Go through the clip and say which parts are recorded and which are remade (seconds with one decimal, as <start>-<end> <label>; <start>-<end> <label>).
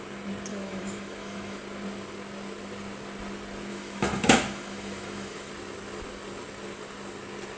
0.0-0.5 recorded; 0.5-1.6 remade; 1.6-3.7 recorded; 3.7-5.5 remade; 5.5-7.6 recorded